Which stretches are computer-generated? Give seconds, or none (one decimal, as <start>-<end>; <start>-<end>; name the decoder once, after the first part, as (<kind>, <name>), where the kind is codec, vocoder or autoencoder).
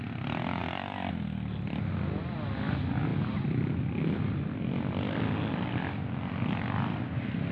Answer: none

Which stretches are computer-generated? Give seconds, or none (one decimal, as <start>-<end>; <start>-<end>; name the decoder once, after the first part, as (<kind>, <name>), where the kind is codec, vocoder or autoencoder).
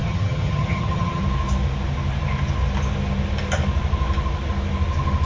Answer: 0.0-1.2 (vocoder, HiFi-GAN)